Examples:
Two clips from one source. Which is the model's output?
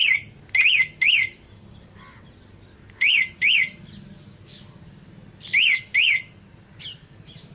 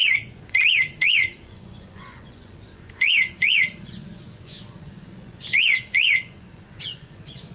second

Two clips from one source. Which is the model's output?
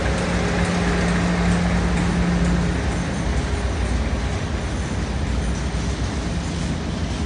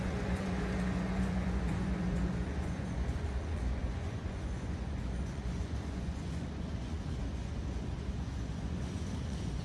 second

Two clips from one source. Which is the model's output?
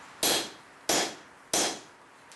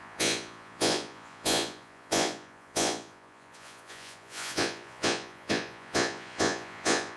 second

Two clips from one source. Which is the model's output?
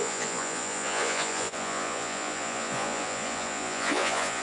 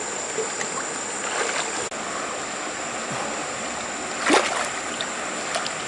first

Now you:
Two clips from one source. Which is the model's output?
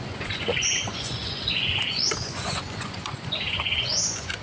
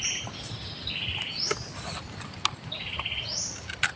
first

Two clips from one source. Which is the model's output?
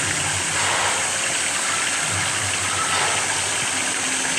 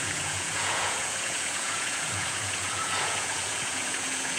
second